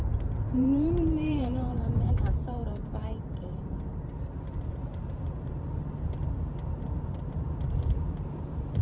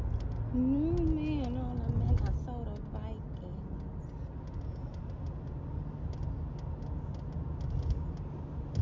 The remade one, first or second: first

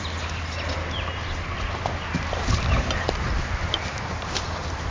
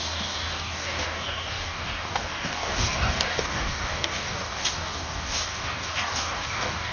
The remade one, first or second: second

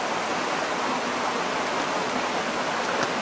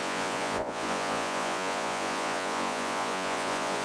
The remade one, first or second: second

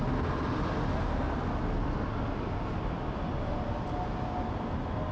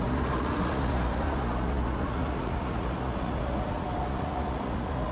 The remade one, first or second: second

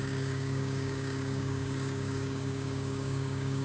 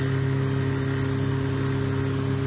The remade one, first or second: first